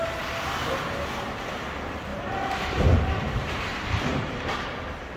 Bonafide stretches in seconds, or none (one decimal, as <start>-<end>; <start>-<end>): 0.0-2.1; 4.6-5.2